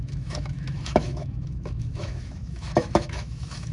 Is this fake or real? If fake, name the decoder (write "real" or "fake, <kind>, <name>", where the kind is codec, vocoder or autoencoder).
fake, autoencoder, DAC-VAE